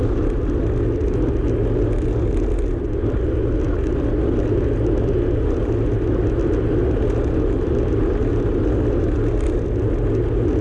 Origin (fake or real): real